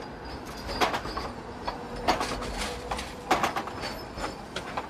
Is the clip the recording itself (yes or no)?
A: yes